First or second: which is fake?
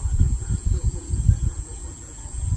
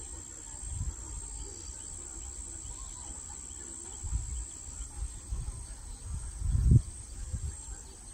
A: first